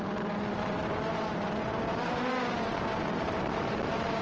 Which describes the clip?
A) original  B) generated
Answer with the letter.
B